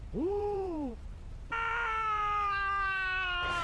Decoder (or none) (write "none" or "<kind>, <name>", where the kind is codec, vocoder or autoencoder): vocoder, BigVGAN v2